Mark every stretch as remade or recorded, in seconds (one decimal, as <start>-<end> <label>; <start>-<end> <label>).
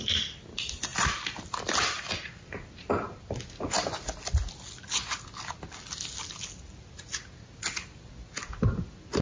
0.0-9.2 recorded